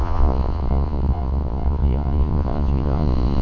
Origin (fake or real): fake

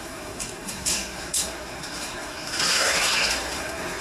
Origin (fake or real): fake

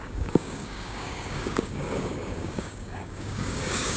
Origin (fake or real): fake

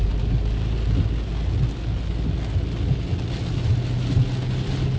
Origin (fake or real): real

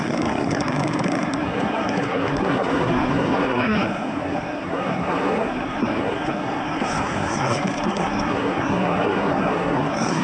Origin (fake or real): fake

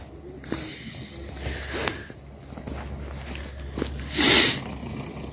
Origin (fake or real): real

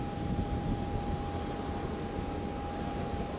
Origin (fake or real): real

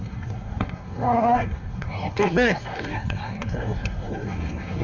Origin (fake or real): fake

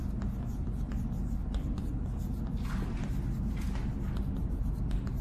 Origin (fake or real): real